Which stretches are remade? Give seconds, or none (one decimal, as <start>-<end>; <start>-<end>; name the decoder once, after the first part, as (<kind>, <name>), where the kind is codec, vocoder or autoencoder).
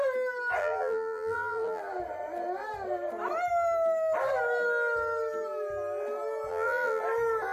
0.6-1.8 (vocoder, BigVGAN v2); 6.5-7.0